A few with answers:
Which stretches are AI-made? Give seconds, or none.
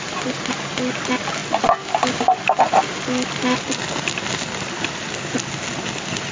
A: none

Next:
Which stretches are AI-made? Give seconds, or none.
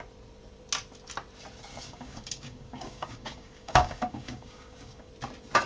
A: 1.7-5.1 (codec, DAC)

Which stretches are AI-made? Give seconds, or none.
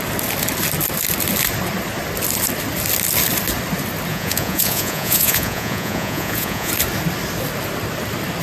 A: 4.1-6.7 (vocoder, Vocos)